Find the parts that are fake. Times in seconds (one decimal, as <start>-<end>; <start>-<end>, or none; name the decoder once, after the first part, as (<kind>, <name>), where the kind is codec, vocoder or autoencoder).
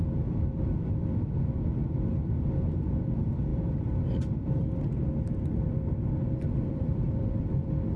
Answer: 3.5-8.0 (vocoder, BigVGAN v2)